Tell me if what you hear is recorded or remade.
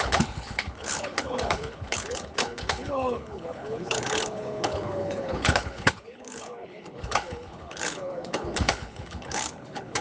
remade